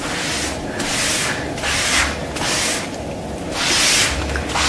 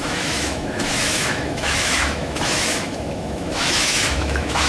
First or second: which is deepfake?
second